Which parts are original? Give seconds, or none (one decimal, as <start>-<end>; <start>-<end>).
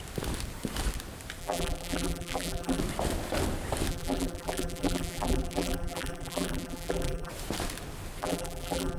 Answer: 0.0-1.4; 2.8-3.9; 7.3-8.2